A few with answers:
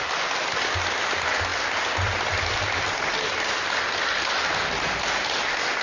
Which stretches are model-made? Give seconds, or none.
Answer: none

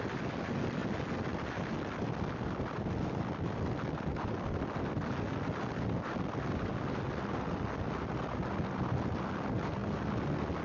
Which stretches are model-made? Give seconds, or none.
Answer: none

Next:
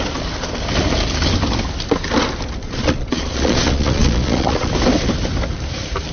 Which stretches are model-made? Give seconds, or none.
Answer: 2.6-4.7 (vocoder, Vocos)

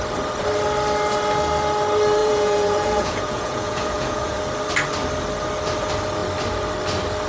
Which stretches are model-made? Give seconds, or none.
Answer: 2.2-4.4 (vocoder, Vocos)

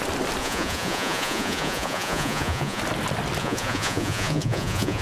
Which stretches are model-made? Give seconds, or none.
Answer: 0.4-2.8 (vocoder, Vocos); 3.4-5.0

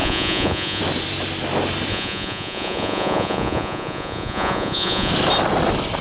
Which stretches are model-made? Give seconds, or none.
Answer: 0.0-0.8 (vocoder, Vocos); 1.9-5.1